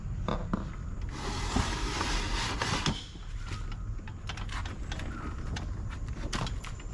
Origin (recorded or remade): recorded